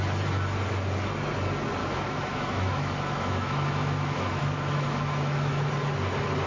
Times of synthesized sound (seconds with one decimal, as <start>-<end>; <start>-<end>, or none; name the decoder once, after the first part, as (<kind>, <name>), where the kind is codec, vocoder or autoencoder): 1.8-5.7 (autoencoder, DAC-VAE)